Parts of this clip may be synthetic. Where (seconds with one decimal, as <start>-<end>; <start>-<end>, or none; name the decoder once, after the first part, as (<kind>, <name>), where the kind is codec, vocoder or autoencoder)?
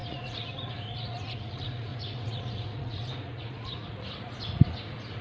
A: 0.0-5.2 (vocoder, Vocos)